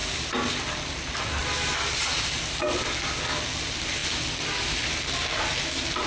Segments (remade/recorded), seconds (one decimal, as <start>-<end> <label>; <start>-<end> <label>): 0.0-6.1 recorded